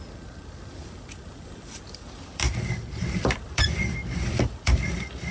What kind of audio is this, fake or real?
fake